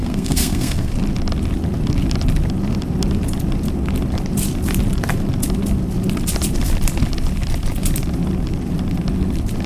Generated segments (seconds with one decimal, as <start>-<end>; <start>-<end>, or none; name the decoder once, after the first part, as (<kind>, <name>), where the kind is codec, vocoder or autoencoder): 0.0-0.9 (codec, SNAC)

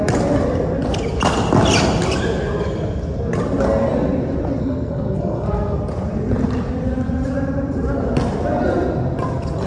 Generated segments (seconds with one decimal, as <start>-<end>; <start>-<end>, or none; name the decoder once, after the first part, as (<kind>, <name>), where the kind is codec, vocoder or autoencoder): 4.6-5.8 (codec, SNAC)

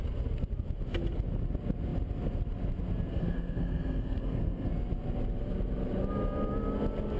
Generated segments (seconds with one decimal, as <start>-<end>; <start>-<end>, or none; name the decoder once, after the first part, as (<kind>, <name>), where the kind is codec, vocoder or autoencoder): 3.1-4.7 (codec, SNAC)

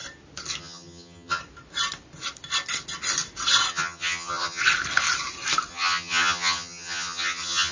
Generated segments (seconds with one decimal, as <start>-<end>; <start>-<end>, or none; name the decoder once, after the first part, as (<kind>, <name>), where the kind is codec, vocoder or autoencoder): 0.6-1.4 (vocoder, HiFi-GAN); 3.7-4.6; 5.7-7.7

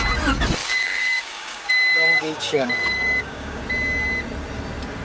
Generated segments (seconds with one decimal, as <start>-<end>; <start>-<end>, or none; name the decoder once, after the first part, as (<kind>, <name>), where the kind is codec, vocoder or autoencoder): 0.6-1.7 (codec, DAC); 2.1-3.6